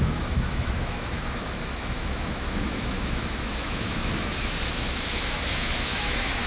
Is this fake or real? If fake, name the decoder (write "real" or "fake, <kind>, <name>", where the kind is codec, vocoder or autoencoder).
fake, autoencoder, DAC-VAE